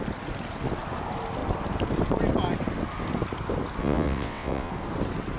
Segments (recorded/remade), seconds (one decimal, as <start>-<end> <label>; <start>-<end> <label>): 0.0-3.8 recorded; 3.8-4.7 remade; 4.7-5.4 recorded